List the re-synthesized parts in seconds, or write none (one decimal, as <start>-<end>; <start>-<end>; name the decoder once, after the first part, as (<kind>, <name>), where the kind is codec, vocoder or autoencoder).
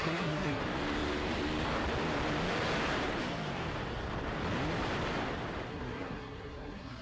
0.0-0.6 (codec, SNAC); 5.7-7.0